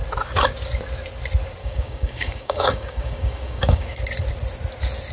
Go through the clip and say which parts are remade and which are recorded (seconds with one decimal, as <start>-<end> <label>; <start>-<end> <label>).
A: 0.0-1.6 recorded; 1.6-4.0 remade; 4.0-5.1 recorded